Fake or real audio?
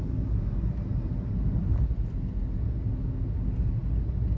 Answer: real